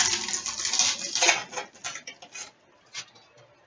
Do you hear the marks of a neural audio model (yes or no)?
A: no